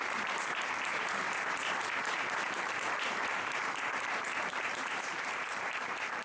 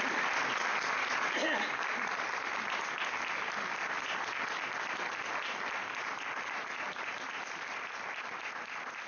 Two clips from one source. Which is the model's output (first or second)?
first